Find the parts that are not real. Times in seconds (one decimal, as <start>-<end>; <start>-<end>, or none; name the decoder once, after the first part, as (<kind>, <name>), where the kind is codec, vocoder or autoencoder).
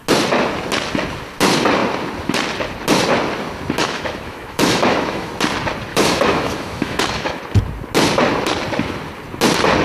3.8-5.3 (autoencoder, DAC-VAE); 5.9-7.4